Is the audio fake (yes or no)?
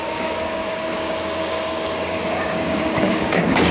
yes